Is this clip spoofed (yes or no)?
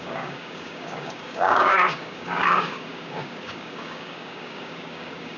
yes